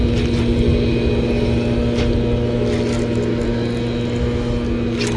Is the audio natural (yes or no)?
yes